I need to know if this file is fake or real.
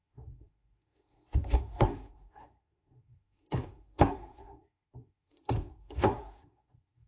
fake